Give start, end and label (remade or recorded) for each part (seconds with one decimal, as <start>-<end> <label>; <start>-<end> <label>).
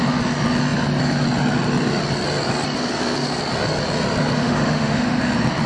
0.0-4.4 recorded; 4.4-5.2 remade; 5.2-5.7 recorded